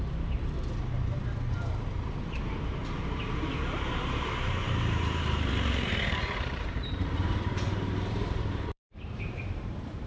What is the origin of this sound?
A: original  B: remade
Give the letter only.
B